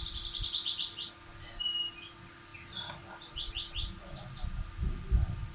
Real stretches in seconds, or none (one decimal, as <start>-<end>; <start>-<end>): 0.0-5.5